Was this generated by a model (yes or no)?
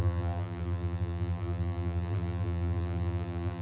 yes